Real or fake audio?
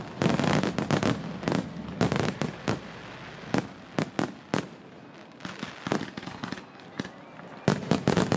real